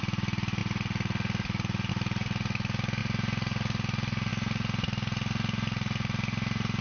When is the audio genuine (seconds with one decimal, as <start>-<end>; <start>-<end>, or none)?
0.0-6.8